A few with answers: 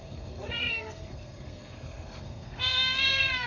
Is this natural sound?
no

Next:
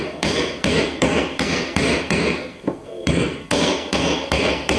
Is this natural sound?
no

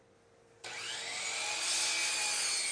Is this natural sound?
yes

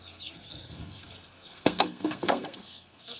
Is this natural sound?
no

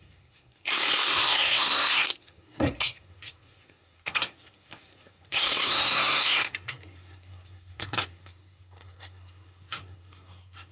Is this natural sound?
no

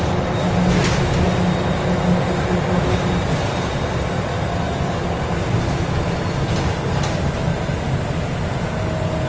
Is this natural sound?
yes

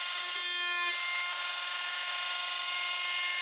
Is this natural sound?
yes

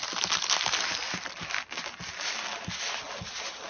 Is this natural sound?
yes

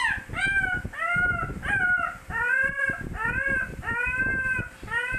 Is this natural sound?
yes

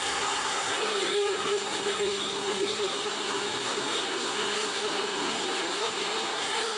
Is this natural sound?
no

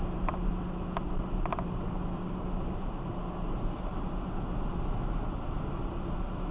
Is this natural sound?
yes